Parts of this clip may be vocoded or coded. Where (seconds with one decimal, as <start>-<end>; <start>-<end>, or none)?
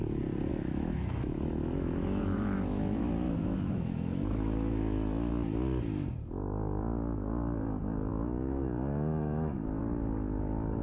0.5-5.3; 8.1-9.8